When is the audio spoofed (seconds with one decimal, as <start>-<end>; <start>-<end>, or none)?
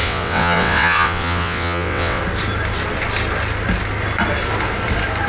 0.0-2.2